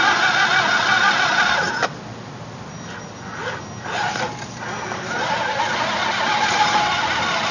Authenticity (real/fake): real